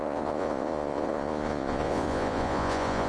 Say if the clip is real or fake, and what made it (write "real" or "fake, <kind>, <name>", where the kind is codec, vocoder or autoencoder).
fake, vocoder, Vocos